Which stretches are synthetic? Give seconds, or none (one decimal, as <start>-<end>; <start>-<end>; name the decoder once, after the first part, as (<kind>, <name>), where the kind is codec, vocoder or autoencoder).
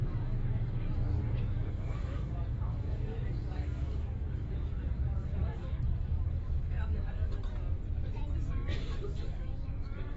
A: 0.0-7.4 (codec, DAC); 8.5-10.2